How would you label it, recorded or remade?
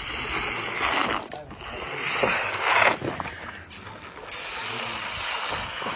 recorded